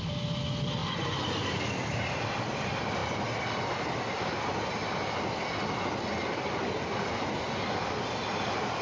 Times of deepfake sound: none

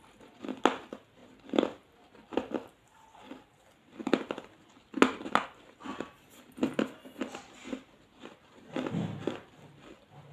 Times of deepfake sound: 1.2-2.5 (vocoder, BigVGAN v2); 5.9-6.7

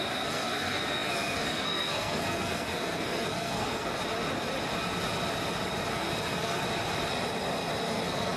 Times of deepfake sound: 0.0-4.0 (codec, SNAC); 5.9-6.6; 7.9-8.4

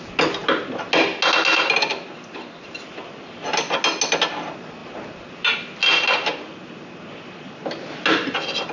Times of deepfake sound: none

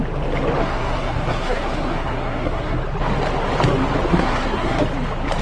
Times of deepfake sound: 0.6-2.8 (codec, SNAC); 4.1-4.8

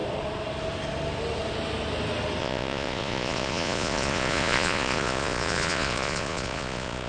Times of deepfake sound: 2.4-7.1 (vocoder, Vocos)

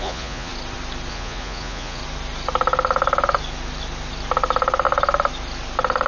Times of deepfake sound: 0.0-0.5 (vocoder, Vocos); 1.1-2.0